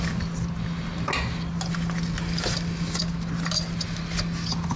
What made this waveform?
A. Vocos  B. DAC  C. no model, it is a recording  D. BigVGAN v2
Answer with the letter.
C